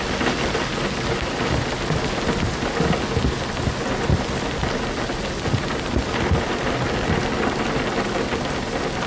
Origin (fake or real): real